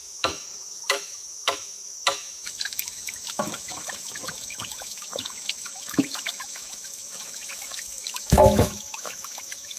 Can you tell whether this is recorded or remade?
remade